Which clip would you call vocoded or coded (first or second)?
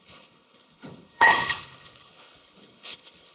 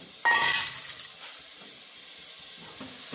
first